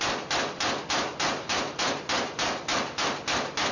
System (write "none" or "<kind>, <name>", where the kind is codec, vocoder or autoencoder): none